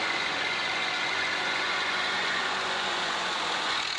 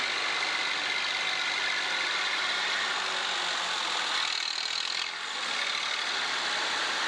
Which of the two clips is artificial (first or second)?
first